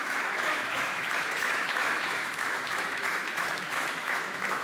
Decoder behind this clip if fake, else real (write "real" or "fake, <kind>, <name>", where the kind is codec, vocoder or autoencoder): fake, autoencoder, DAC-VAE